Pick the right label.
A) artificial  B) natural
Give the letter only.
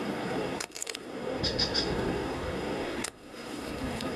A